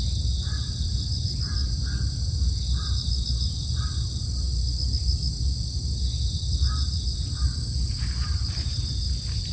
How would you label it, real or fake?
real